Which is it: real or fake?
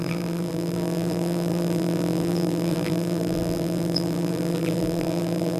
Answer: fake